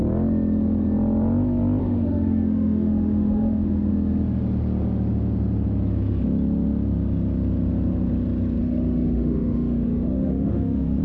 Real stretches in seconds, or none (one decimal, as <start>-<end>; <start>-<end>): 0.0-1.8; 3.9-8.6